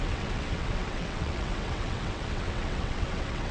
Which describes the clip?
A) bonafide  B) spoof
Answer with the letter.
B